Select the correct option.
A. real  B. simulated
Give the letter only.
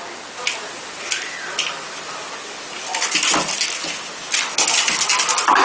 A